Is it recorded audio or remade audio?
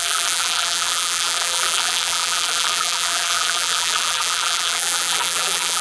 remade